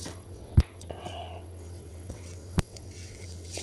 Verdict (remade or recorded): remade